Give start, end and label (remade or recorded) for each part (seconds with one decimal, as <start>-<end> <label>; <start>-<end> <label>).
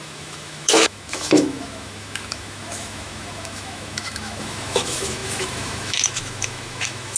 0.0-7.2 remade